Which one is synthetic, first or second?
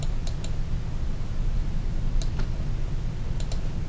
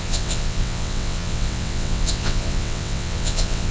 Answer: second